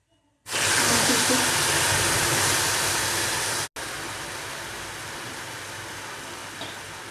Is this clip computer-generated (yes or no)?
no